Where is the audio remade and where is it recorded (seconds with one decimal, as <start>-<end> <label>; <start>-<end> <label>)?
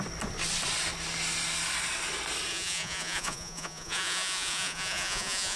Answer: 0.0-2.5 recorded; 2.5-5.6 remade